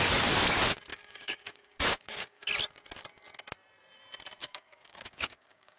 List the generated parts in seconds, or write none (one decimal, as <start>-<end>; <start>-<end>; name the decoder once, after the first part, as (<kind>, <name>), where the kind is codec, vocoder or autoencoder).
0.9-2.5 (codec, DAC); 4.4-5.8